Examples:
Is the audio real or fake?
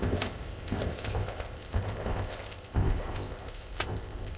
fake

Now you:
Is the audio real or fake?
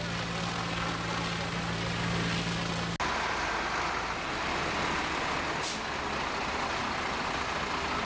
real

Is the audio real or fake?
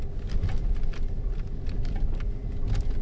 real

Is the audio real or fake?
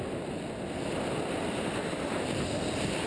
real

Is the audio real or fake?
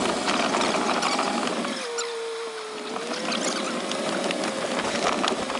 real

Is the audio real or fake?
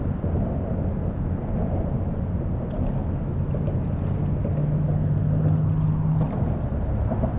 real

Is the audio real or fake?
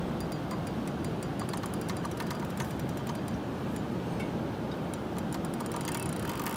real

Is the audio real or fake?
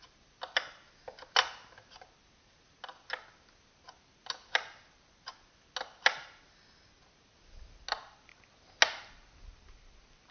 real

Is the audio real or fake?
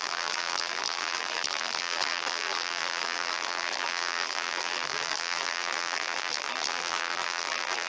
fake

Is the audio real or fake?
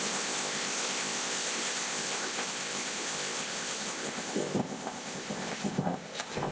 fake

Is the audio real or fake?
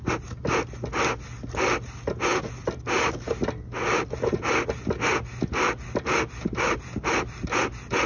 real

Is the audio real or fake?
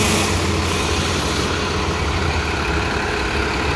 real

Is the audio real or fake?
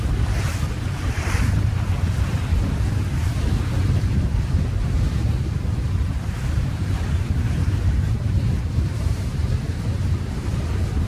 fake